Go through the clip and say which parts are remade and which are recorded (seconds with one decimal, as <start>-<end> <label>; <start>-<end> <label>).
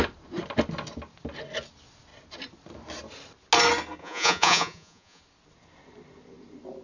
0.0-4.0 recorded; 4.0-5.2 remade; 5.2-6.8 recorded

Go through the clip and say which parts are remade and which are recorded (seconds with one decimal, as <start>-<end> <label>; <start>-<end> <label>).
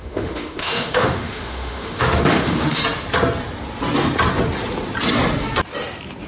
0.0-2.8 remade; 2.8-6.3 recorded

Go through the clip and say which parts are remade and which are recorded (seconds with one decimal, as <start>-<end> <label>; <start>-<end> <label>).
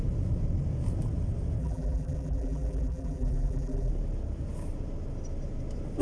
0.0-1.6 recorded; 1.6-3.9 remade; 3.9-6.0 recorded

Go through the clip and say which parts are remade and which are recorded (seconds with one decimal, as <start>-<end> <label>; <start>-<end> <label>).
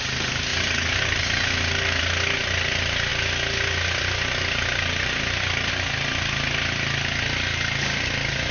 0.0-8.5 recorded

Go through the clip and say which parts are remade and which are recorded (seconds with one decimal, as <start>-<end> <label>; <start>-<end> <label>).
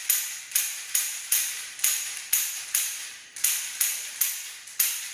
0.0-0.6 recorded; 0.6-5.1 remade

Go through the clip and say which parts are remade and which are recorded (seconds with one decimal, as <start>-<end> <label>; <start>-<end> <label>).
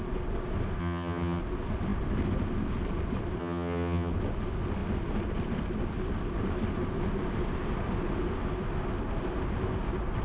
0.0-0.8 recorded; 0.8-1.4 remade; 1.4-3.4 recorded; 3.4-4.1 remade; 4.1-10.2 recorded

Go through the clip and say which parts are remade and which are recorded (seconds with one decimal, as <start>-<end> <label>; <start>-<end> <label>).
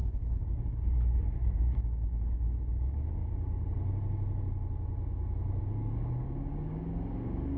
0.0-3.2 remade; 3.2-5.6 recorded; 5.6-7.6 remade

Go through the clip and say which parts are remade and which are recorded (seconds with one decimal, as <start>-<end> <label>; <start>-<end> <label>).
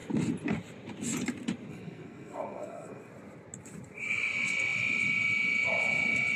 0.0-1.7 recorded; 1.7-3.1 remade; 3.1-6.4 recorded